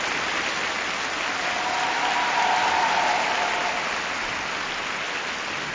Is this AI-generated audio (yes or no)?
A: no